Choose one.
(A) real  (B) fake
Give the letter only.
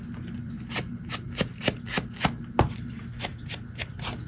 A